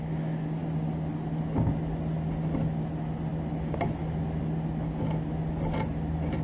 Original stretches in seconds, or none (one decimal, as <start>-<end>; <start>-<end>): 0.0-6.4